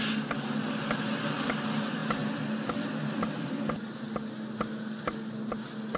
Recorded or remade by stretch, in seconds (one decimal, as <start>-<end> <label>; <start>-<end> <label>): 0.0-6.0 recorded